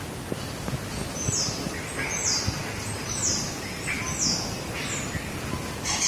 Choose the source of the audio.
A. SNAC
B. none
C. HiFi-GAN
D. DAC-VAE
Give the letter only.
B